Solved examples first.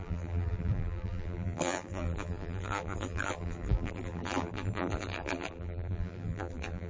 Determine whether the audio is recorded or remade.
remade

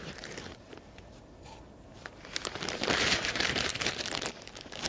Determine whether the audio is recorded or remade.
remade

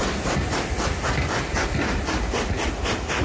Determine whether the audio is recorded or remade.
recorded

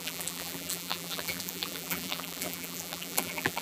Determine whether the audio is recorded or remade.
remade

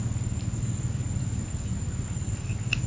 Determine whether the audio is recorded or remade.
recorded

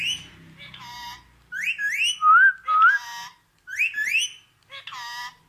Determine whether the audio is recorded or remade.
recorded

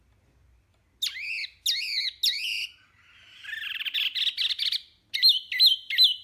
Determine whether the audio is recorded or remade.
recorded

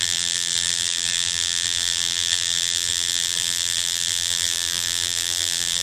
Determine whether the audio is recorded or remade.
remade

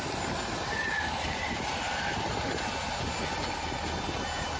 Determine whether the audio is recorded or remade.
recorded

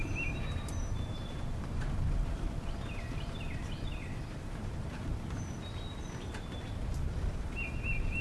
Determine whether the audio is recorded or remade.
remade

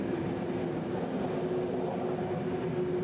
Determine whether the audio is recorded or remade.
recorded